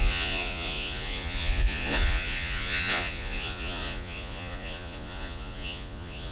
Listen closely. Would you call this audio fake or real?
fake